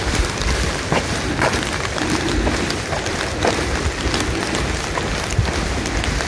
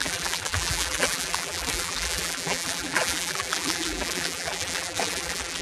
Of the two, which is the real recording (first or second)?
first